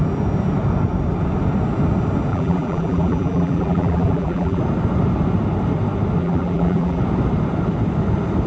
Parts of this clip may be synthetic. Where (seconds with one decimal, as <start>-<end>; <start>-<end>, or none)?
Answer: 2.3-4.6; 6.2-7.0